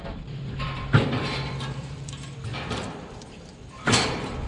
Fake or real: fake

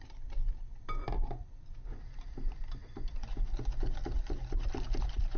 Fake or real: fake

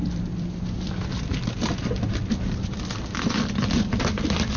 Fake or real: fake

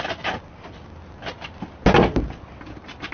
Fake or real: real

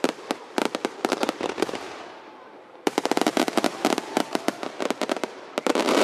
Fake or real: fake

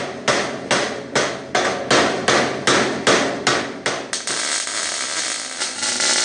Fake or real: real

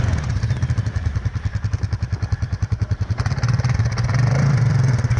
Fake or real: fake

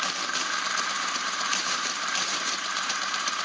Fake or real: fake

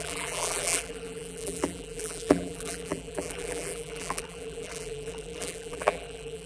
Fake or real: fake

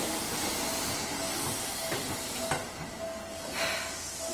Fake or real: real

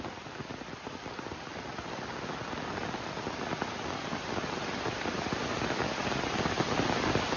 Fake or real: real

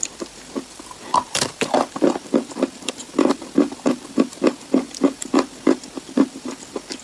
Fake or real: fake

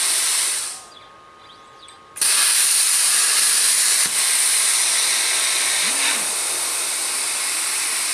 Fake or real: fake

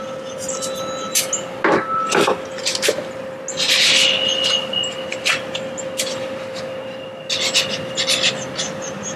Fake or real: real